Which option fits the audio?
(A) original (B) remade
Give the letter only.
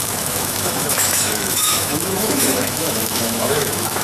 B